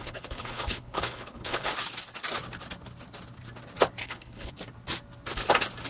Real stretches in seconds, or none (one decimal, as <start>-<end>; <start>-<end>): 1.7-4.0; 4.5-5.9